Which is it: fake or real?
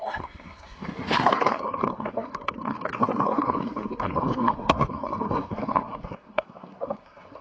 fake